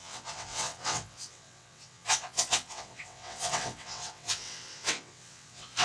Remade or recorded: remade